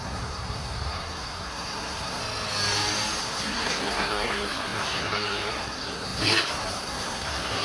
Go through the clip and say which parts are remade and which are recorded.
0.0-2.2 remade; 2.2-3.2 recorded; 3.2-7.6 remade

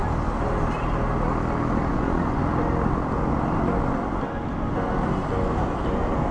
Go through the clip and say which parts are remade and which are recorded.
0.0-1.9 recorded; 1.9-2.4 remade; 2.4-6.3 recorded

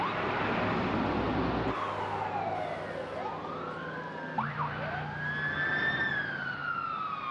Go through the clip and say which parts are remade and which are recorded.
0.0-1.3 remade; 1.3-5.7 recorded; 5.7-6.6 remade; 6.6-7.3 recorded